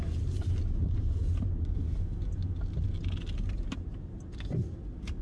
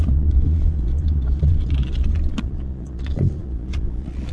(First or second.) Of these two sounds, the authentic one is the first